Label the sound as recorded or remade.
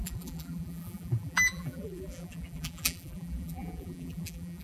remade